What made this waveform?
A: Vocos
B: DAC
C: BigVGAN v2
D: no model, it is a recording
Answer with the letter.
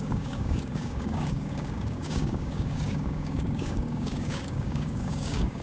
B